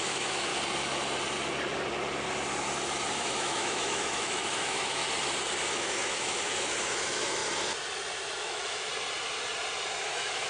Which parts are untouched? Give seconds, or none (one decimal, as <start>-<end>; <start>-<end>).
0.5-3.1; 5.0-5.7; 7.4-8.4; 8.9-10.0